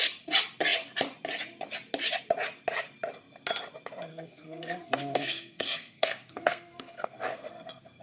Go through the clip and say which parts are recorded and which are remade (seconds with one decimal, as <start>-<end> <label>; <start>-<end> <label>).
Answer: 0.0-4.1 recorded; 4.1-8.0 remade